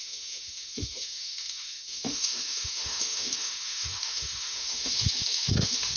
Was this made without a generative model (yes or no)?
no